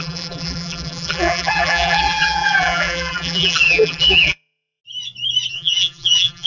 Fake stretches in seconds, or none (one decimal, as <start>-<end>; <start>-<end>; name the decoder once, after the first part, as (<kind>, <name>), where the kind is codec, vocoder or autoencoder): 0.0-4.8 (vocoder, BigVGAN v2); 5.5-6.5